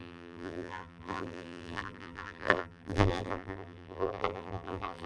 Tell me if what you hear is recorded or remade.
remade